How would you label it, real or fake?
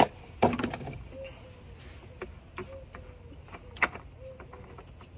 real